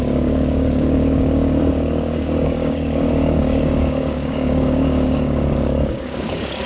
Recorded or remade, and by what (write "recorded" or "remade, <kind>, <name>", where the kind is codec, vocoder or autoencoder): remade, codec, DAC